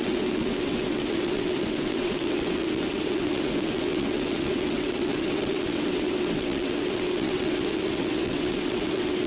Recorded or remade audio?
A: remade